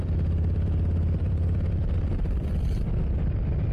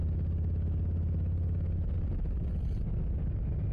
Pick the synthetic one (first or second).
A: first